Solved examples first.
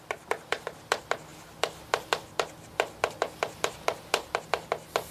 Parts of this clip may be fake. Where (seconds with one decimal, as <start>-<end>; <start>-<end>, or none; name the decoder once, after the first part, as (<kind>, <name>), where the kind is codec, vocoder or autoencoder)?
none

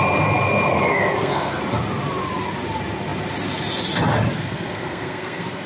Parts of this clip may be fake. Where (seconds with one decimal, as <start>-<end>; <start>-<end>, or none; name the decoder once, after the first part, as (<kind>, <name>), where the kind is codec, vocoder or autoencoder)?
0.7-1.6 (codec, SNAC); 4.3-5.7

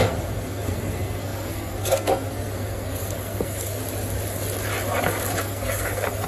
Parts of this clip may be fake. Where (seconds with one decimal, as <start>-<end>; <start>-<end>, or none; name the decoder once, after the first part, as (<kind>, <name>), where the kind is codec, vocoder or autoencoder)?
0.0-3.8 (codec, SNAC); 5.4-6.3

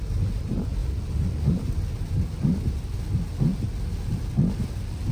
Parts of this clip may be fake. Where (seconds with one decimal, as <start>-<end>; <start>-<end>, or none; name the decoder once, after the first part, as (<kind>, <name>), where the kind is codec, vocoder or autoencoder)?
none

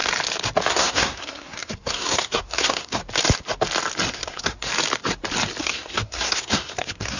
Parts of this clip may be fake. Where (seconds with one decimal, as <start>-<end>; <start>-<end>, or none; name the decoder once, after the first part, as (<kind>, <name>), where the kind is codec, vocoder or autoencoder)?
0.7-3.0 (codec, SNAC); 4.1-4.7; 5.6-7.2

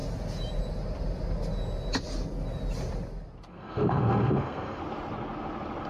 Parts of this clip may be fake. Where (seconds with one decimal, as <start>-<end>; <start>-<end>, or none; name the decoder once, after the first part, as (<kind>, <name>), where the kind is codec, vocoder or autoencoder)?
3.5-4.8 (codec, SNAC)

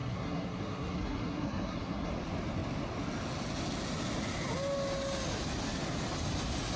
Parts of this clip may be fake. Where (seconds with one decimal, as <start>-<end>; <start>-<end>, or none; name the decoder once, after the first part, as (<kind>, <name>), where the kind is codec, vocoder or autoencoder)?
0.0-2.1 (codec, SNAC)

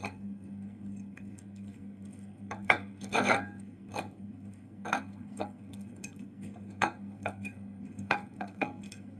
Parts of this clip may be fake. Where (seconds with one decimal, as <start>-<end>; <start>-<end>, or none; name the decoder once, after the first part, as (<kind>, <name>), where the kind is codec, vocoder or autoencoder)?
0.0-9.2 (codec, SNAC)